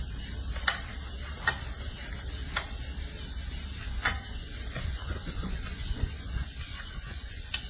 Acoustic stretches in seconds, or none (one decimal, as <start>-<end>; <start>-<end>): 0.0-3.8